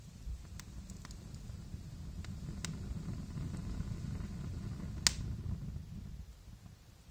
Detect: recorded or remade recorded